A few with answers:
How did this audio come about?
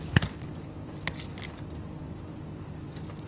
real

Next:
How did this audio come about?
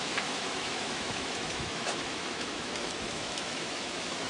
fake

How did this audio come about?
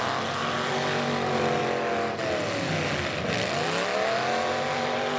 real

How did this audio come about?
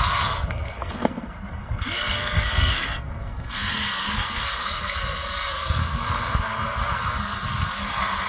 fake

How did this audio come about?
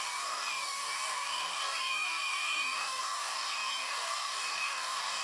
fake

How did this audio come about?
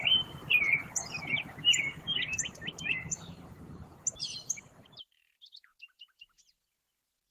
fake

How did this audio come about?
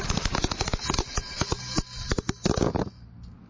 real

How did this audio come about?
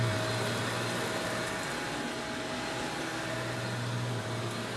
real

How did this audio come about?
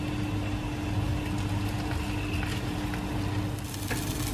real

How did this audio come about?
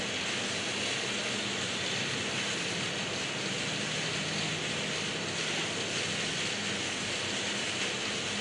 real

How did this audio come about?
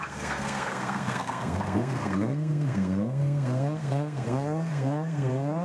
fake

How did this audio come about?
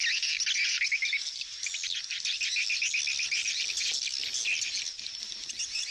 real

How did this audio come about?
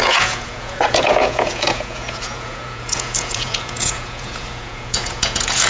fake